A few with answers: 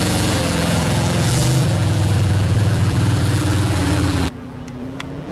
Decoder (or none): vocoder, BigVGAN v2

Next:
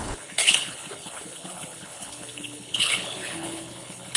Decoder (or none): codec, HILCodec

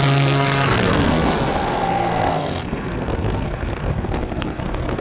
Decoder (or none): codec, SNAC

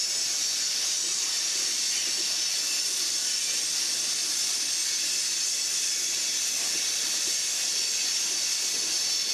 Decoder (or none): none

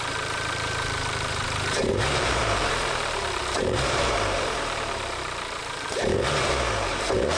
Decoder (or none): vocoder, BigVGAN v2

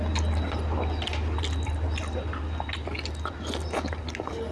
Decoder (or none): none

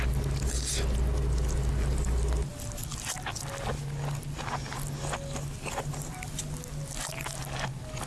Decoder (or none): none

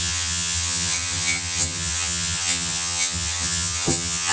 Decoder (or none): vocoder, HiFi-GAN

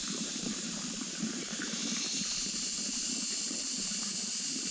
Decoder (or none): vocoder, BigVGAN v2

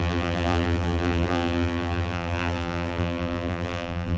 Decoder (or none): vocoder, BigVGAN v2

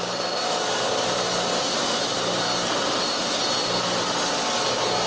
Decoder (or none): none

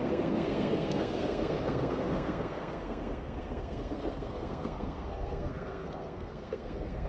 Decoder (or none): codec, SNAC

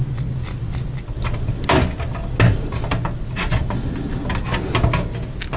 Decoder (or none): none